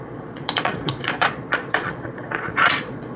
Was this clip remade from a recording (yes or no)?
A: yes